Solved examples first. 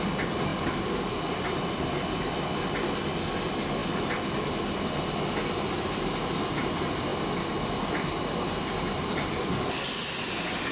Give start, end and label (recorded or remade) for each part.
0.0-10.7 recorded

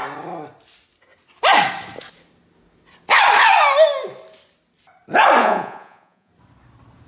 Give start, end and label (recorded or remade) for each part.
0.0-5.4 recorded; 5.4-6.3 remade; 6.3-7.1 recorded

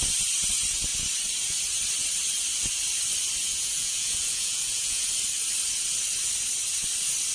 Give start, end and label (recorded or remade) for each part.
0.0-3.4 recorded; 3.4-5.0 remade; 5.0-7.3 recorded